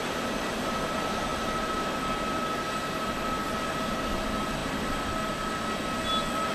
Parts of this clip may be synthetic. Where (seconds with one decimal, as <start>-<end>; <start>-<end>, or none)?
0.0-0.5